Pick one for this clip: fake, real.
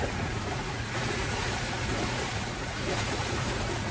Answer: fake